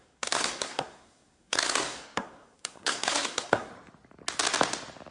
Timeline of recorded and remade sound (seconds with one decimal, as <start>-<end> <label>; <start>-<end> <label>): 0.0-3.7 remade; 3.7-5.1 recorded